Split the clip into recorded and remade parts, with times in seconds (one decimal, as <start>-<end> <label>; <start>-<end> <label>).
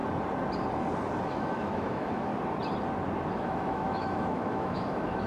0.0-1.3 recorded; 1.3-2.3 remade; 2.3-3.3 recorded; 3.3-5.3 remade